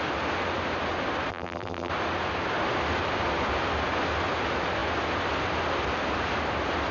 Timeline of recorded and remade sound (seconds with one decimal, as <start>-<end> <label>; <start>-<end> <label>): 0.0-1.3 recorded; 1.3-1.9 remade; 1.9-6.9 recorded